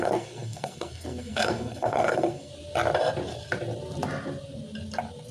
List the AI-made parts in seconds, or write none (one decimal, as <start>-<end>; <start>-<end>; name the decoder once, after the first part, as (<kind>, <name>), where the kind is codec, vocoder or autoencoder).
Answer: 0.0-2.5 (codec, SNAC)